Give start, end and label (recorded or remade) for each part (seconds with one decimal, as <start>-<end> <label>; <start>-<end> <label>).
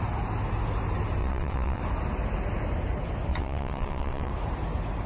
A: 0.0-1.2 recorded; 1.2-1.8 remade; 1.8-3.3 recorded; 3.3-4.3 remade; 4.3-5.1 recorded